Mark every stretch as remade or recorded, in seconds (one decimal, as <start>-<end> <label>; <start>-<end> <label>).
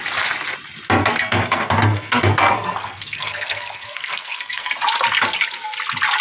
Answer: 0.0-1.0 recorded; 1.0-4.7 remade; 4.7-6.2 recorded